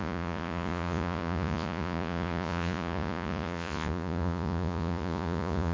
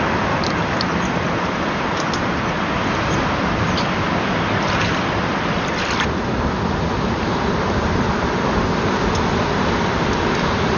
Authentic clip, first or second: second